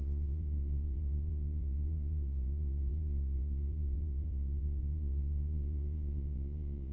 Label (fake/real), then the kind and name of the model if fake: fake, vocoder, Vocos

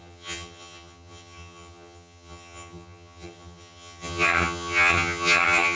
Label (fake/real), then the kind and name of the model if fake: fake, vocoder, HiFi-GAN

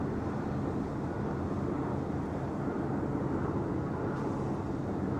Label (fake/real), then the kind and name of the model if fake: real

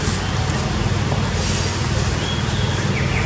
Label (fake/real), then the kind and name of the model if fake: real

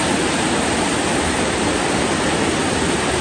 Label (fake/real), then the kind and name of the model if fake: real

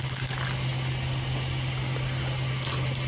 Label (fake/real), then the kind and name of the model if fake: real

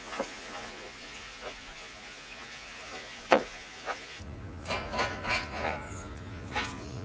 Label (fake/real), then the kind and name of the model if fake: fake, vocoder, Vocos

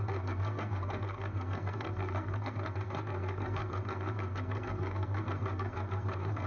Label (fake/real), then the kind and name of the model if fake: fake, codec, SNAC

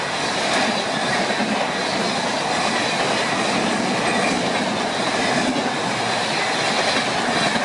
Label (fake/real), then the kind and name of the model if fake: real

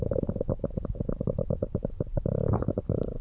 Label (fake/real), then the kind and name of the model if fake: fake, vocoder, BigVGAN v2